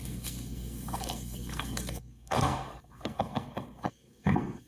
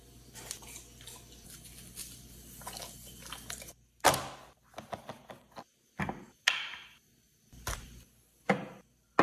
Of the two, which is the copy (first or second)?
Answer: first